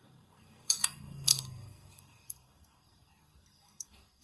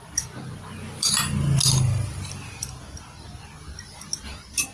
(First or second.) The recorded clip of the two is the second